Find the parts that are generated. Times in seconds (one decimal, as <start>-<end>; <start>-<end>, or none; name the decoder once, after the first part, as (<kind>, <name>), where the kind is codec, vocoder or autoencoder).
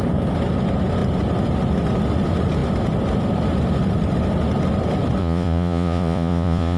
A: 5.2-6.8 (vocoder, Vocos)